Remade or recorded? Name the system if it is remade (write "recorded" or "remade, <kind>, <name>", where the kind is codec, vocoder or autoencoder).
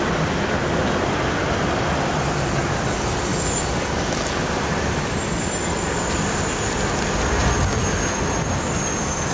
recorded